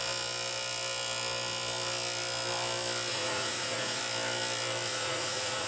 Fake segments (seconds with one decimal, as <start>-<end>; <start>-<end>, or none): 3.1-4.0; 4.9-5.7